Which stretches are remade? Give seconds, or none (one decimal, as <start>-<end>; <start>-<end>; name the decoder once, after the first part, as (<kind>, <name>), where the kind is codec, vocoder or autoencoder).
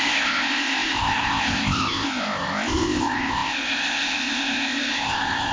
0.0-5.5 (codec, ZipCodec)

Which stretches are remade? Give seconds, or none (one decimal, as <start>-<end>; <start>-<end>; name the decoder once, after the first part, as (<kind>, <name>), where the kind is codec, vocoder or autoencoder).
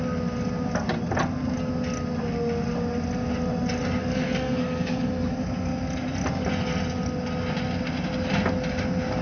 4.0-5.1 (codec, DAC)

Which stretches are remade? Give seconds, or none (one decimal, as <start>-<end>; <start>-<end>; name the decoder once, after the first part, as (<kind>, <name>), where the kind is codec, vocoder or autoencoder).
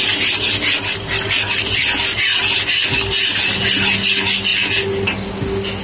none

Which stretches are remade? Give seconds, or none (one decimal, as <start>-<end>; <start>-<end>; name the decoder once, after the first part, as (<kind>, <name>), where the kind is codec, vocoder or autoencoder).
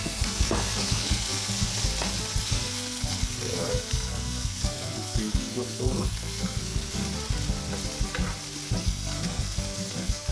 0.0-1.7 (codec, SNAC); 2.4-7.0; 8.8-10.3